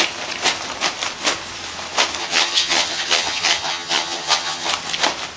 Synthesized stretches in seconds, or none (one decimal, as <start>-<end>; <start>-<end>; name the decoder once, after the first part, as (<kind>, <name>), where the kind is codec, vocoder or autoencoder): 2.2-4.7 (vocoder, HiFi-GAN)